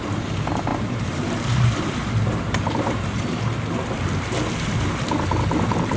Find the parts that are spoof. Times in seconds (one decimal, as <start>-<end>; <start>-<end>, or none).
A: 0.7-3.4